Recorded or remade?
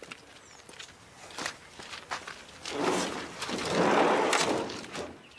recorded